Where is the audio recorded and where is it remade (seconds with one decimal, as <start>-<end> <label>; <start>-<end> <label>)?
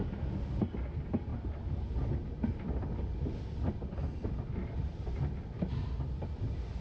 0.0-6.8 recorded